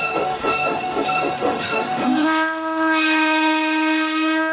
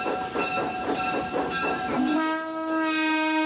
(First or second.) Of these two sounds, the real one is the second